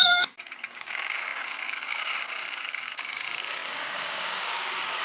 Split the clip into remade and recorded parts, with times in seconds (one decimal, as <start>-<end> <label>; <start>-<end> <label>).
0.0-5.0 remade